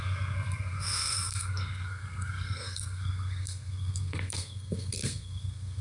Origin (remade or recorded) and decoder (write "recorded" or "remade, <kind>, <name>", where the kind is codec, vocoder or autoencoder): remade, codec, SNAC